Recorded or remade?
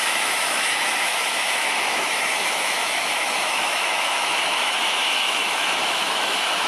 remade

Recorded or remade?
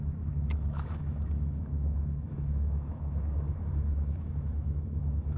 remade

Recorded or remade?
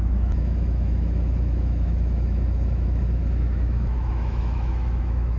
remade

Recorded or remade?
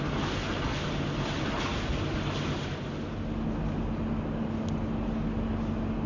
recorded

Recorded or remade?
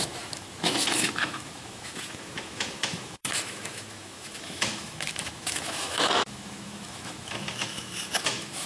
remade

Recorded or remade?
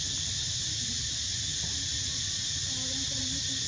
recorded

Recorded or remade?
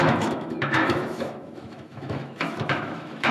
remade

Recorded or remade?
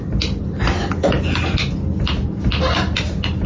recorded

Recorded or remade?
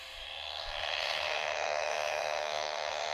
remade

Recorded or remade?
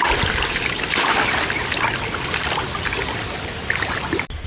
recorded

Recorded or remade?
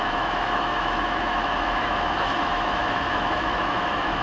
remade